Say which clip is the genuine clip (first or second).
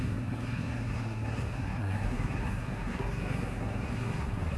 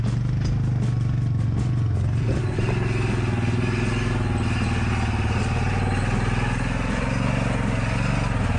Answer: second